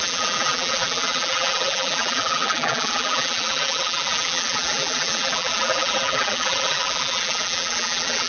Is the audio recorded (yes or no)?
no